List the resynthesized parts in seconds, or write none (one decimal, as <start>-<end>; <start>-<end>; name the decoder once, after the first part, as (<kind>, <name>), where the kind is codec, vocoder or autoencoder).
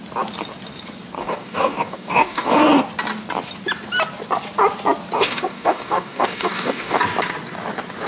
1.2-2.8 (codec, DAC); 5.2-7.0